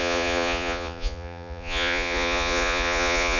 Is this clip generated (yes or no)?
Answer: yes